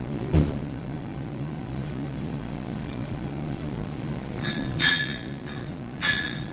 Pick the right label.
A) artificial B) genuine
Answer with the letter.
A